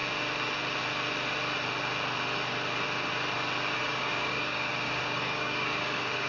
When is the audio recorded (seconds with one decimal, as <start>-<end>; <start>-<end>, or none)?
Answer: 0.0-3.8